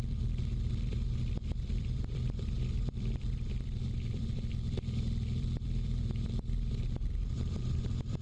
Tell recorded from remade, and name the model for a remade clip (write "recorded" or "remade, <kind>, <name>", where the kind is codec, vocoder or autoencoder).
remade, vocoder, BigVGAN v2